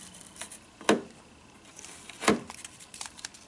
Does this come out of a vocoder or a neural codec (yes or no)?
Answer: no